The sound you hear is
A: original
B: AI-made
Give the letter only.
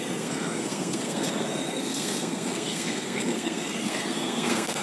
B